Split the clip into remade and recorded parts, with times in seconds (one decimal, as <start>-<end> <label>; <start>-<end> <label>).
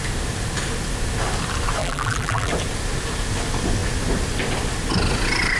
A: 0.0-1.8 recorded; 1.8-2.5 remade; 2.5-5.6 recorded